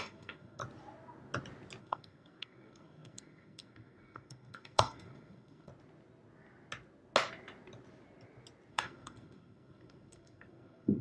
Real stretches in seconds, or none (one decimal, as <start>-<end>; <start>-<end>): 0.6-1.8; 5.7-8.7